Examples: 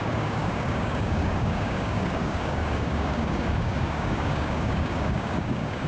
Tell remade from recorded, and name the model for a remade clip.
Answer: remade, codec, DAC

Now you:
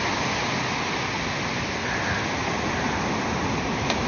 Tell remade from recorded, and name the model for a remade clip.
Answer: recorded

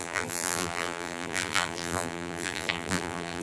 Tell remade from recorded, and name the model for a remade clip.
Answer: remade, vocoder, BigVGAN v2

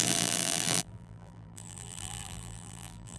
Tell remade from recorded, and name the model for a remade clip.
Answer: remade, vocoder, BigVGAN v2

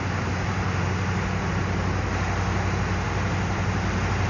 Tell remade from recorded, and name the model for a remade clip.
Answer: recorded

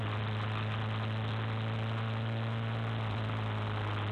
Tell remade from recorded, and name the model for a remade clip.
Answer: recorded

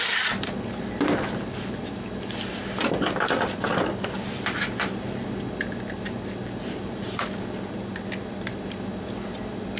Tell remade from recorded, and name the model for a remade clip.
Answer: recorded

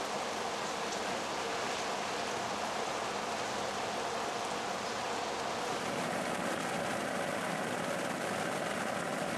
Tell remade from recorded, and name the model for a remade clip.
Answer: recorded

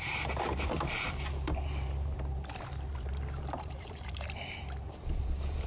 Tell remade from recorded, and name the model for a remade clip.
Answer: remade, vocoder, BigVGAN v2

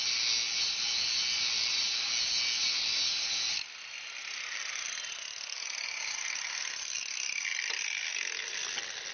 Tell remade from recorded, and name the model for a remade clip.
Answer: recorded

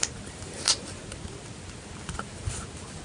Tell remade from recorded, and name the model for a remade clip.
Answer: recorded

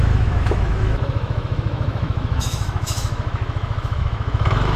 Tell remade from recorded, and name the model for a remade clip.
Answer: remade, autoencoder, DAC-VAE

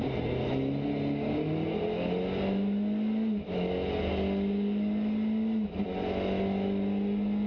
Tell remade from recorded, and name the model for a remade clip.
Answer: recorded